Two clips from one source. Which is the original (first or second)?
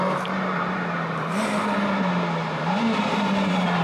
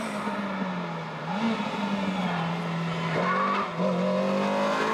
second